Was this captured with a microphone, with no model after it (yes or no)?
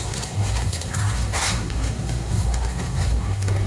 no